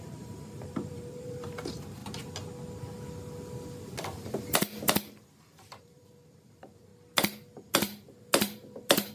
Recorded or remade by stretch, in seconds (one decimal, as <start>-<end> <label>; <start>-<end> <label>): 0.0-2.0 remade; 2.0-5.8 recorded; 5.8-6.9 remade; 6.9-7.7 recorded; 7.7-9.1 remade